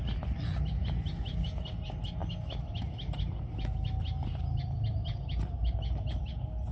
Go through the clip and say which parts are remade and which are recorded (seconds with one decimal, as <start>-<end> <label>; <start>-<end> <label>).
0.0-6.7 recorded

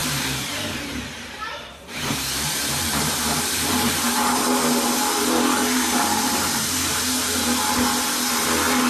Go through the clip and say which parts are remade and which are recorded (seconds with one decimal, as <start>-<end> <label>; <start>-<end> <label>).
0.0-4.5 remade; 4.5-5.6 recorded; 5.6-7.3 remade; 7.3-8.9 recorded

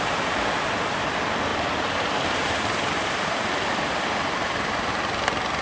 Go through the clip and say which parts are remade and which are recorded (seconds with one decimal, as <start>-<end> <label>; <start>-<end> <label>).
0.0-1.5 recorded; 1.5-4.9 remade; 4.9-5.6 recorded